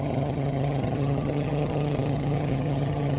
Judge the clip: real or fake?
fake